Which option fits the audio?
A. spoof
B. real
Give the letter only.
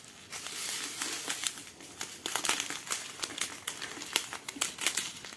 B